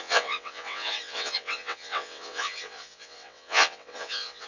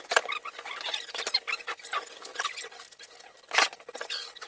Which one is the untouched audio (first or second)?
second